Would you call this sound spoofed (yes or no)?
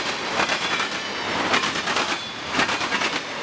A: no